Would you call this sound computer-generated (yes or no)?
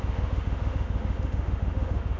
yes